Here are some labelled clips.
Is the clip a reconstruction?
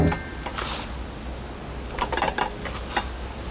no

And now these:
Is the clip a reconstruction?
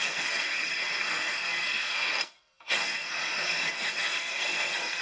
yes